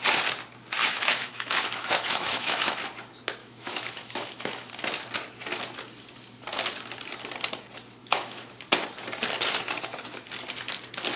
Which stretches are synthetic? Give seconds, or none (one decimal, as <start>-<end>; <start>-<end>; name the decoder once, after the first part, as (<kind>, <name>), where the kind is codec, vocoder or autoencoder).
0.8-2.7 (autoencoder, DAC-VAE); 3.4-4.7; 8.0-8.5